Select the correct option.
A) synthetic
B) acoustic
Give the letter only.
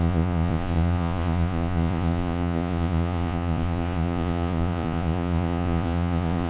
A